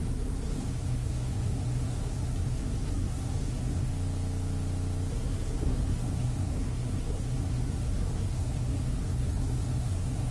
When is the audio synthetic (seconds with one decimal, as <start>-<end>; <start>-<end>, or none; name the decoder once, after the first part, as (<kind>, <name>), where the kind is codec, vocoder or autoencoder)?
0.0-3.9 (codec, SNAC); 5.1-10.3